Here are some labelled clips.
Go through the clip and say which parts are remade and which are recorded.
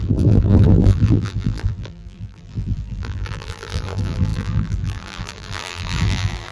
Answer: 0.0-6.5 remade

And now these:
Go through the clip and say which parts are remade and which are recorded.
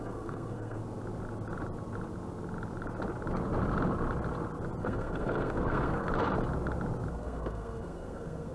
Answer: 0.0-0.8 remade; 0.8-4.8 recorded; 4.8-6.1 remade; 6.1-7.1 recorded; 7.1-8.5 remade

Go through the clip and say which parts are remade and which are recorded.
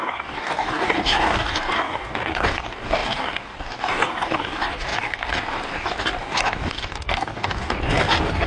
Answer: 0.0-8.5 remade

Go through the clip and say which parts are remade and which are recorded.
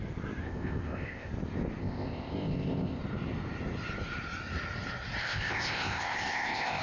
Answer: 0.0-0.4 recorded; 0.4-1.3 remade; 1.3-1.8 recorded; 1.8-3.0 remade; 3.0-5.2 recorded; 5.2-6.8 remade